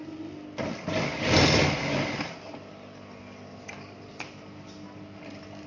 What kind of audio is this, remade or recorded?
recorded